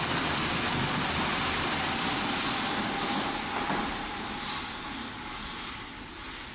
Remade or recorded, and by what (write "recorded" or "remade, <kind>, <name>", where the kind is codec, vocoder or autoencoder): recorded